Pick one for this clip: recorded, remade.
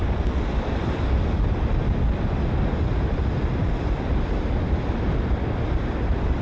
recorded